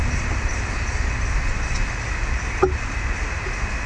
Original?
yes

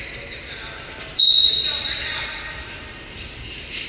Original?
no